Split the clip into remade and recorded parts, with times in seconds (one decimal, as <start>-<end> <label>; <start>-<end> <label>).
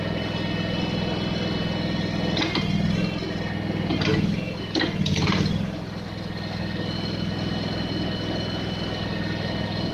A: 0.0-9.9 recorded